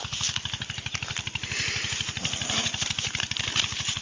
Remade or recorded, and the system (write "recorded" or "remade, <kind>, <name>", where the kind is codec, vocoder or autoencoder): recorded